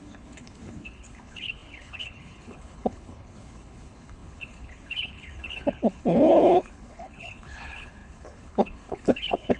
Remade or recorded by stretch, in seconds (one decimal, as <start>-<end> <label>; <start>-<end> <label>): 0.0-9.6 remade